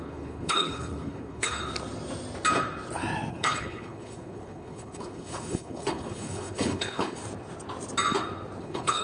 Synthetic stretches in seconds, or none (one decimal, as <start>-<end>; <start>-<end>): 0.0-1.6; 3.3-7.2; 8.6-9.0